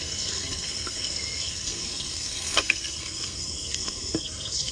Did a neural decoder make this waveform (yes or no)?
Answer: yes